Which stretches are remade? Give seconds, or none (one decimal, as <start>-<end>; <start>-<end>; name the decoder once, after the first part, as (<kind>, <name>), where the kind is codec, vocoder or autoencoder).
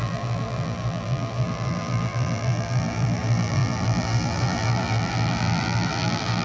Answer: 0.0-6.4 (vocoder, BigVGAN v2)